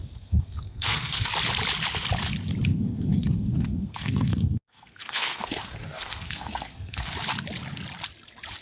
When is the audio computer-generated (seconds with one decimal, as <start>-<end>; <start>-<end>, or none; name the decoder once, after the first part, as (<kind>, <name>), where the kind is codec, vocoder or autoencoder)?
0.0-1.3 (codec, SNAC); 2.7-7.1